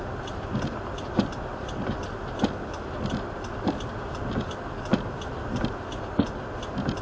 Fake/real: real